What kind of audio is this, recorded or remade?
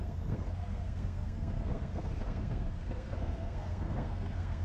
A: remade